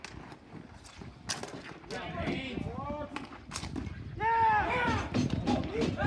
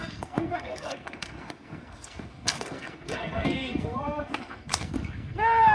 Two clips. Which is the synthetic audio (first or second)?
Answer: second